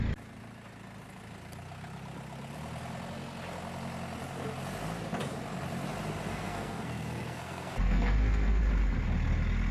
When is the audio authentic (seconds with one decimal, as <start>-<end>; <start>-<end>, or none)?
0.0-6.3; 8.6-9.7